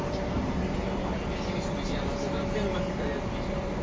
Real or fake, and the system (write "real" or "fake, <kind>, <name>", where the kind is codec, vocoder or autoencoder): real